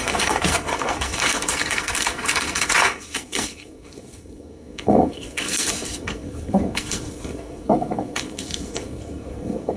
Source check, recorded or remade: remade